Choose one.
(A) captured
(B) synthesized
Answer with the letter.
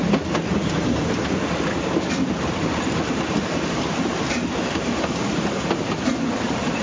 A